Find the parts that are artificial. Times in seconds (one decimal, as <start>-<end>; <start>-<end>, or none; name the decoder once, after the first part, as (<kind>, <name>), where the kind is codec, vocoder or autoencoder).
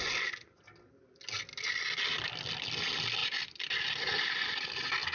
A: none